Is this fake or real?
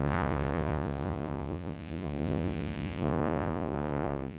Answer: fake